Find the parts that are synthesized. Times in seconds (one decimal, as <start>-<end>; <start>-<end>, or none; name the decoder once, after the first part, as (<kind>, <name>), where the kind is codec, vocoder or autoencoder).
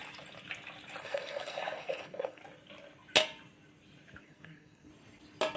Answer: 1.0-2.4 (codec, SNAC); 4.2-4.9